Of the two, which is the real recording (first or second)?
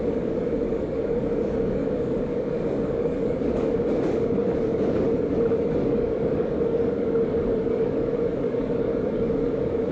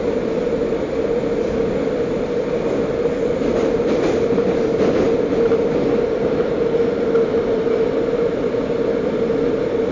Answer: second